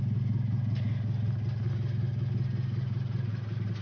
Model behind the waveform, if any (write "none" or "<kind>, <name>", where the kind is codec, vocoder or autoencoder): none